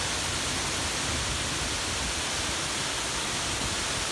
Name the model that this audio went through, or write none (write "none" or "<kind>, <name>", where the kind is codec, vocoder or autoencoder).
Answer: none